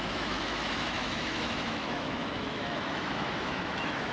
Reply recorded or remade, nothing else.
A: remade